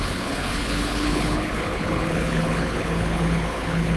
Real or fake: fake